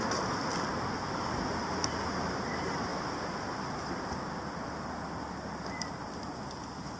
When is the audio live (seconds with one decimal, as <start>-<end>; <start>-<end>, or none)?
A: 2.9-3.6

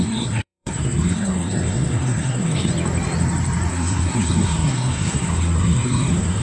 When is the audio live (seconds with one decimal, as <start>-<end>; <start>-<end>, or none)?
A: 2.7-3.7

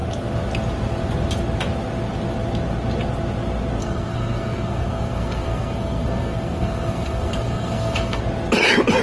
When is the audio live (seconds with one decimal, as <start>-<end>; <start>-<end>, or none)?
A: 0.0-3.8; 8.2-9.0

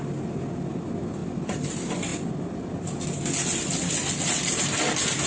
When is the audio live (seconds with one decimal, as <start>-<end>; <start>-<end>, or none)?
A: 0.0-5.3

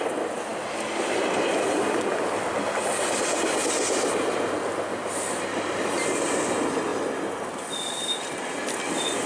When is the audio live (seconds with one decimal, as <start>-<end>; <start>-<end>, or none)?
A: 0.0-9.3